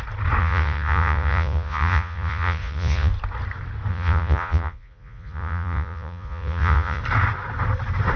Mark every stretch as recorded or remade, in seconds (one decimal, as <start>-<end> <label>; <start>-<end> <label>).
0.0-0.4 recorded; 0.4-3.1 remade; 3.1-3.9 recorded; 3.9-7.0 remade; 7.0-8.2 recorded